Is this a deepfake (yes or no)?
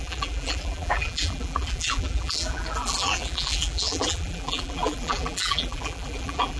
yes